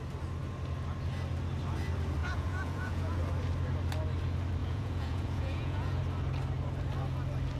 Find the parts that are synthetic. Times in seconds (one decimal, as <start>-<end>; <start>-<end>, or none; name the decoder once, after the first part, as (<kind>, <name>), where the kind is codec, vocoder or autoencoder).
2.2-3.2 (vocoder, Vocos); 4.6-6.0